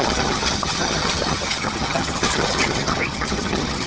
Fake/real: fake